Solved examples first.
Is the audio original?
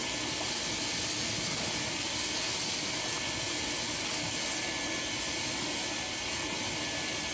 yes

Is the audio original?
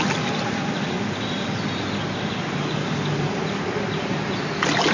yes